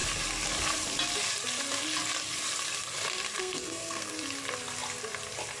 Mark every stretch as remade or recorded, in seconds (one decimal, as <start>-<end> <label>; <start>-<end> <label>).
0.0-3.4 recorded; 3.4-4.1 remade; 4.1-5.6 recorded